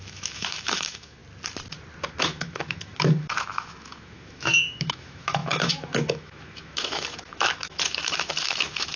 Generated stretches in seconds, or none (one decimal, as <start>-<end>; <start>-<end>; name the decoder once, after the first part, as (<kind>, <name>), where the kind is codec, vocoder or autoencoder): 0.0-1.2 (autoencoder, DAC-VAE); 2.2-9.0